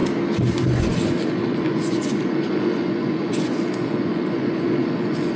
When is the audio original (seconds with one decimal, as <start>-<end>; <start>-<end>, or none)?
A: 0.0-0.5